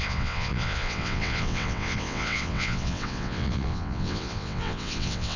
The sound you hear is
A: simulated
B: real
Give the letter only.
A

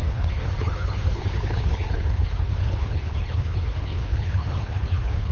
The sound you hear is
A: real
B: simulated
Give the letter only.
B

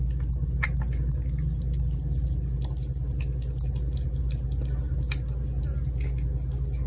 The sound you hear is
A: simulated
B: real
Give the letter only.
B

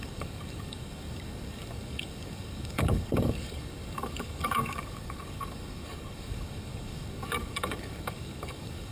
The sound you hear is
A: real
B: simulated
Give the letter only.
B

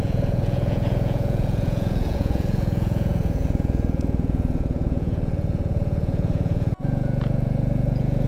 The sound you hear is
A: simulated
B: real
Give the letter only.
A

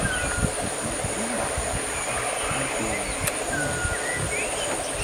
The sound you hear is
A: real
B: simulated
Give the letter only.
A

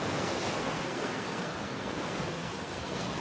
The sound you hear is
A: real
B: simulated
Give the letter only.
B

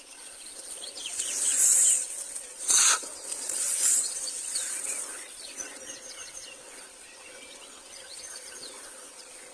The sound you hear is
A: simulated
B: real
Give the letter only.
A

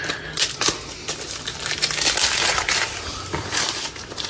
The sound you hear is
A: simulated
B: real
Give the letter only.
B